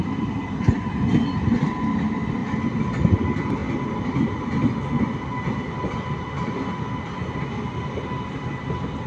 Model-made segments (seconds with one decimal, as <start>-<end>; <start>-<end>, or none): 0.0-2.4; 3.0-3.6